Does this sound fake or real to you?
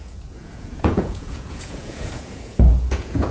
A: fake